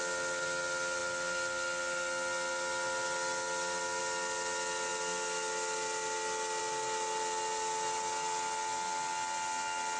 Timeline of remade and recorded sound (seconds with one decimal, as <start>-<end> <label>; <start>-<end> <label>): 0.0-10.0 recorded